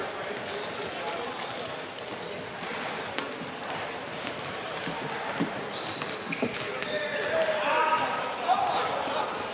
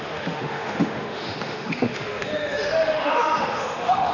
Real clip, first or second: first